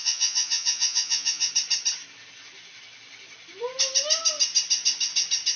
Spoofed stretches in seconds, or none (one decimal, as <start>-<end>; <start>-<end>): 0.0-1.5